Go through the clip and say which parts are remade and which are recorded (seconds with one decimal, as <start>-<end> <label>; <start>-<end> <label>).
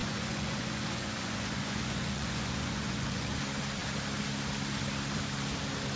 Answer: 0.0-3.4 remade; 3.4-6.0 recorded